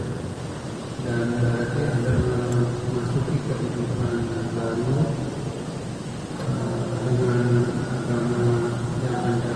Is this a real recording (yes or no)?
yes